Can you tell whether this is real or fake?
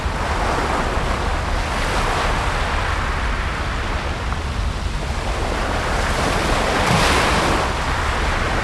real